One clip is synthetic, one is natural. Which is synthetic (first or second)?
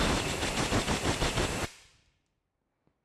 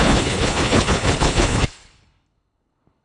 second